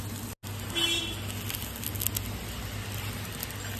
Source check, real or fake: real